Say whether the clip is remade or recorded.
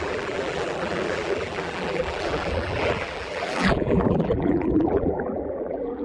remade